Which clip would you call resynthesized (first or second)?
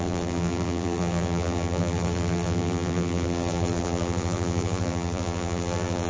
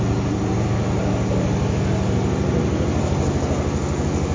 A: first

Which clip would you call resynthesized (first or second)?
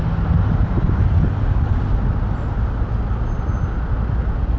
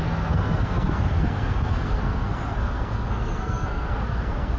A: second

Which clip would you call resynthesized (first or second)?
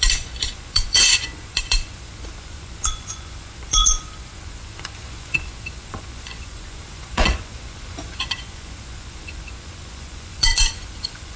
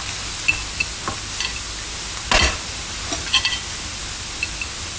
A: first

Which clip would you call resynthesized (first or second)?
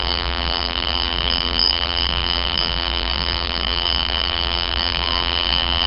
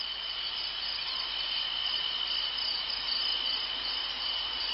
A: first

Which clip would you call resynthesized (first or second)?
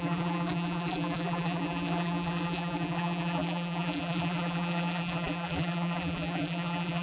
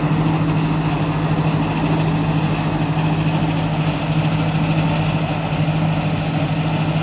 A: first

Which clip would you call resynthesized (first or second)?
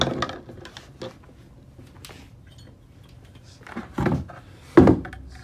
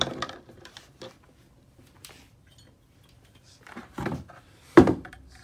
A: second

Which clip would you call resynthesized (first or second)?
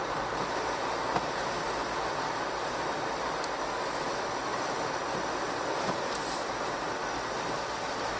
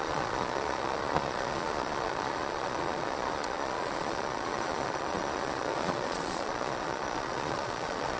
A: second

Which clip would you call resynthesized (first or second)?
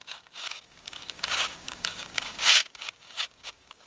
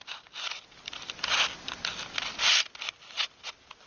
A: first